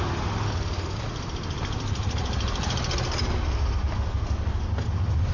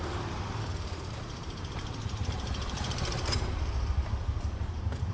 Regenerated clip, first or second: second